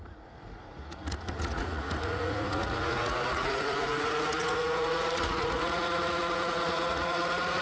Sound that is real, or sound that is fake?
fake